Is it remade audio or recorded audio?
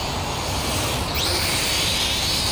recorded